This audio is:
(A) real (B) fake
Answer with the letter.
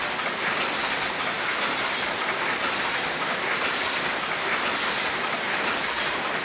A